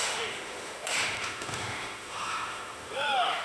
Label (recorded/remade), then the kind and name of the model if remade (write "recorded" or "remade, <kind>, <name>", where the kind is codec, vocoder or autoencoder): remade, autoencoder, DAC-VAE